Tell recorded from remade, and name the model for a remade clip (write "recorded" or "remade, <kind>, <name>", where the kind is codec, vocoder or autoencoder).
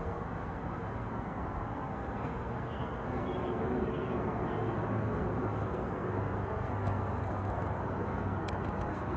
remade, codec, SNAC